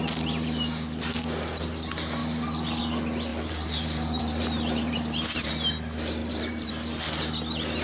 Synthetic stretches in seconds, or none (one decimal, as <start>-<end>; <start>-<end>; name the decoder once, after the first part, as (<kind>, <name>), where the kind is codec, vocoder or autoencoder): 3.3-5.5 (vocoder, BigVGAN v2); 6.2-6.7